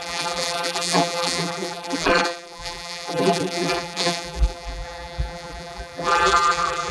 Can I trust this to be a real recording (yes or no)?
no